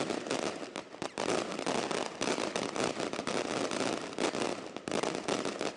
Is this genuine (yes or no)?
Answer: yes